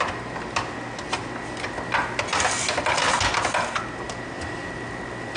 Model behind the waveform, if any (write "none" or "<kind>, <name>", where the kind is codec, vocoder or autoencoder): none